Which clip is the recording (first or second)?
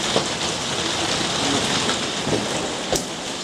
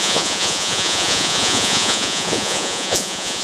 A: first